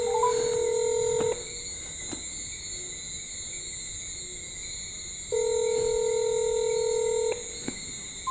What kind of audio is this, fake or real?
real